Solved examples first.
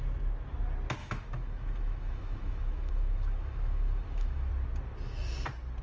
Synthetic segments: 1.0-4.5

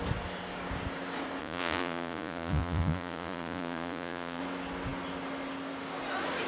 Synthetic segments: 1.4-4.4

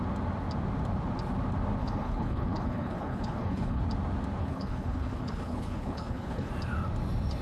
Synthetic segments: 1.8-3.8; 4.4-6.5

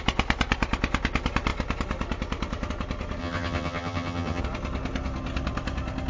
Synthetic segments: 3.2-4.4

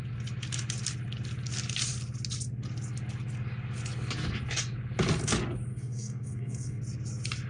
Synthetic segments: 5.7-6.8

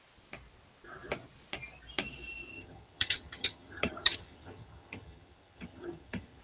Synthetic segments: 2.5-6.4

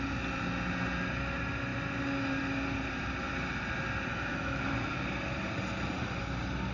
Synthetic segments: 4.1-4.7

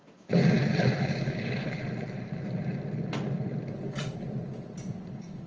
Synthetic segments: 0.0-0.4; 1.0-1.8; 5.1-5.5